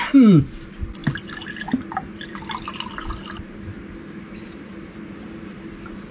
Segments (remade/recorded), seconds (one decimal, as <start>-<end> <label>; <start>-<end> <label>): 0.0-6.1 recorded